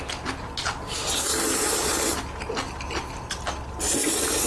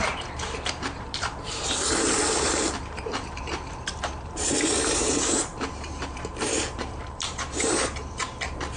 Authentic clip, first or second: first